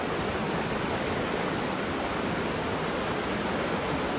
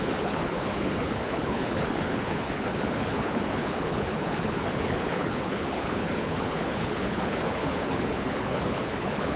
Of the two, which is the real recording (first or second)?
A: first